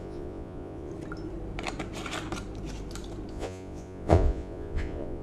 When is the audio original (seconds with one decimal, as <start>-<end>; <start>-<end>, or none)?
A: 0.9-3.3